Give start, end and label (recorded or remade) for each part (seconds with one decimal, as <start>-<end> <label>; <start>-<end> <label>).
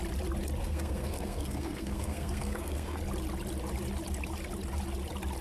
0.0-0.6 recorded; 0.6-3.0 remade; 3.0-5.4 recorded